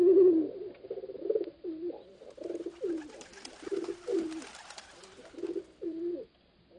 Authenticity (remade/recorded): recorded